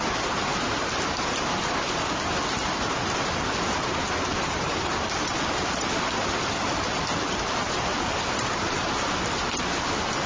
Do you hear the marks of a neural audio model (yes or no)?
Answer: no